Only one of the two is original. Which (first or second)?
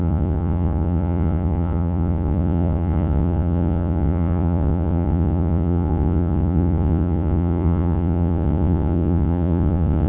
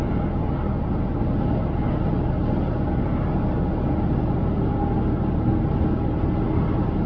second